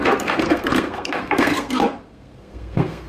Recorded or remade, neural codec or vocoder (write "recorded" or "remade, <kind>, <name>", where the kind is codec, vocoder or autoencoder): remade, codec, SNAC